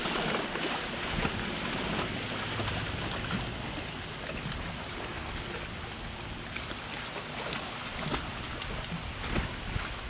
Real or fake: real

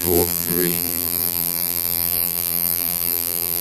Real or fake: fake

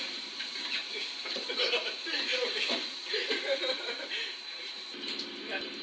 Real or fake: fake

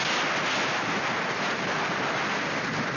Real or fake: real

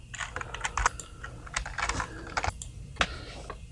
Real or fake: real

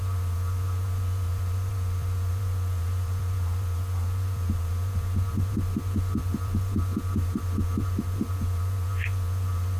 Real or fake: fake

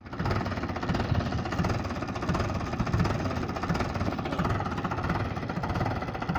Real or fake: real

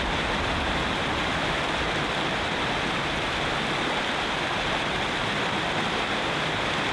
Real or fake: real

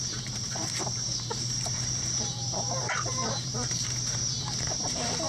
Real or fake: fake